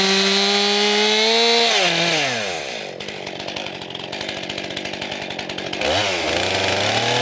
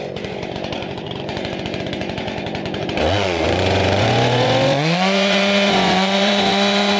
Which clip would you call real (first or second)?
first